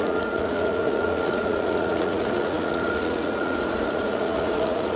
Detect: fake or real fake